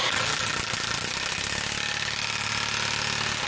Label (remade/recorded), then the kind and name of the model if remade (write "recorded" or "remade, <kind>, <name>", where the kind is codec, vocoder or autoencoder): recorded